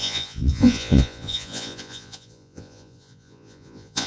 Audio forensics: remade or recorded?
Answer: remade